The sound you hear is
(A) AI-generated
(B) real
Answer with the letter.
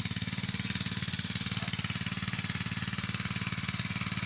B